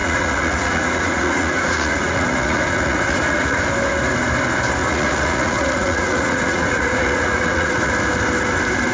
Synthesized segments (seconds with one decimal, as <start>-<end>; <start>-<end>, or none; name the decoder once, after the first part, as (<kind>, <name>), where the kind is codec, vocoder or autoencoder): 0.0-3.6 (vocoder, Vocos); 4.8-7.9